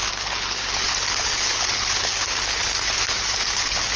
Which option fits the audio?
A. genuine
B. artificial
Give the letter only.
B